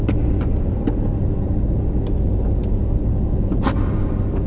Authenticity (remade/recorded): remade